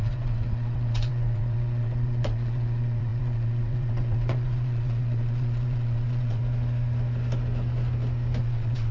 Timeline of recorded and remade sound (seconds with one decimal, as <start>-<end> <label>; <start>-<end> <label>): 0.0-6.4 remade; 6.4-8.4 recorded; 8.4-8.9 remade